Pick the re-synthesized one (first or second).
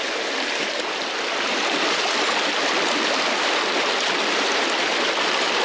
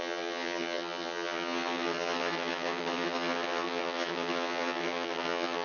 second